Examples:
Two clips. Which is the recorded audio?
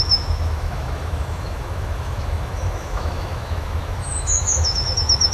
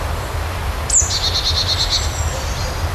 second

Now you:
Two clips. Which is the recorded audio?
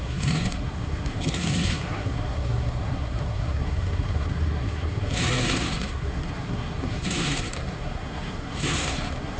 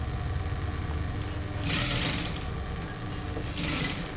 second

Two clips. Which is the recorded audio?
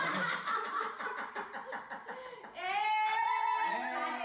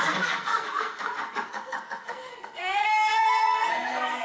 first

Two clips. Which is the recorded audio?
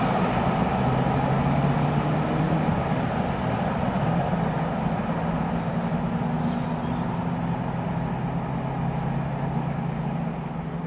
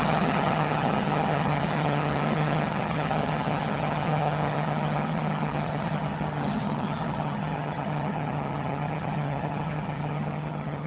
first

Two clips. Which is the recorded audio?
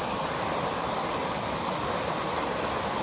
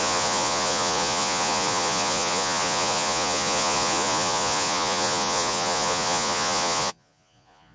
first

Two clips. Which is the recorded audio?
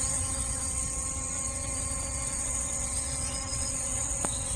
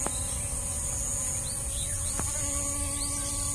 second